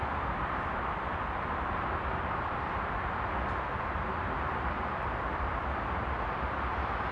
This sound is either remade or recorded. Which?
remade